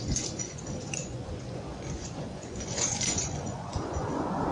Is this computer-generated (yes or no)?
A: yes